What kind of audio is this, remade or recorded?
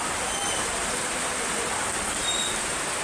recorded